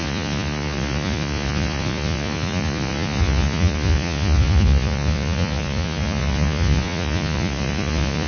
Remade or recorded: remade